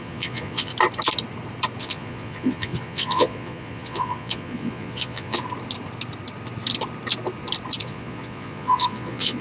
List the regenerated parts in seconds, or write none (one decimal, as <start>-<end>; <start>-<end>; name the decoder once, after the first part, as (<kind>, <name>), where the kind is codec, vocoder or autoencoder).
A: 0.0-0.7 (vocoder, Vocos); 1.8-5.4; 7.8-9.4